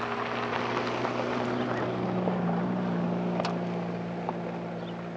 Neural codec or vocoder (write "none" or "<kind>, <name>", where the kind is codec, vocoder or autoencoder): none